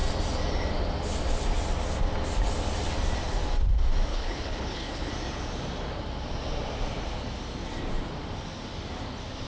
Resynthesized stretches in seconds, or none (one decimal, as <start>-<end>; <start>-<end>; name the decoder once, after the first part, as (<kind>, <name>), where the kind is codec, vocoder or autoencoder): 4.1-5.1 (codec, HILCodec)